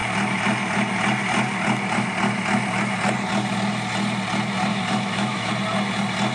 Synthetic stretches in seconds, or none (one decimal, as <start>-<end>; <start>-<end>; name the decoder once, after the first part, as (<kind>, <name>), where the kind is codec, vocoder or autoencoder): 4.7-5.5 (autoencoder, DAC-VAE)